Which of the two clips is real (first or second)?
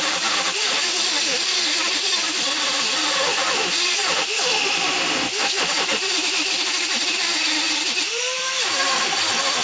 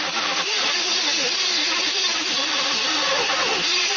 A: second